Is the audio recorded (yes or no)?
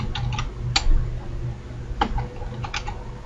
yes